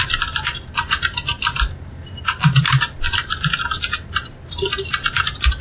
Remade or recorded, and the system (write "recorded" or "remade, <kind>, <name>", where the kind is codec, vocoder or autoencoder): remade, vocoder, BigVGAN v2